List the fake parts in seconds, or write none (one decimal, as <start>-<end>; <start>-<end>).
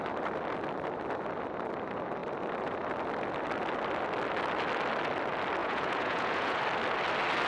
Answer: 5.6-6.6